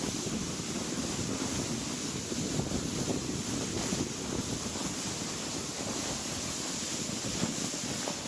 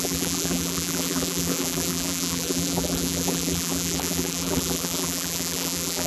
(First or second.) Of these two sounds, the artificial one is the second